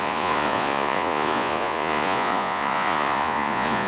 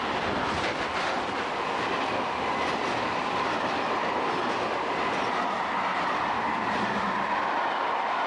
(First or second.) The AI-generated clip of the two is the first